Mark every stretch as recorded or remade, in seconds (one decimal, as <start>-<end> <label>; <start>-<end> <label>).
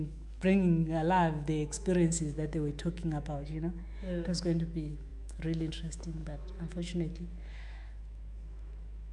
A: 0.0-9.1 remade